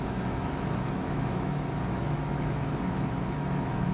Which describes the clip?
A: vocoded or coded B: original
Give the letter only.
A